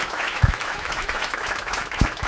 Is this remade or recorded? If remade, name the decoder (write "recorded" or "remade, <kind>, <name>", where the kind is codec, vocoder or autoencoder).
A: remade, autoencoder, DAC-VAE